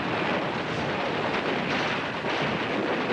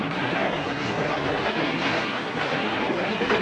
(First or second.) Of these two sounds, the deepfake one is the second